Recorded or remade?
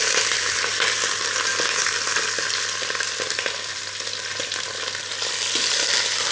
recorded